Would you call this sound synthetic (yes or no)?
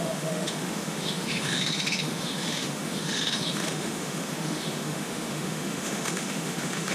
yes